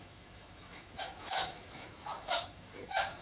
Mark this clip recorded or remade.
remade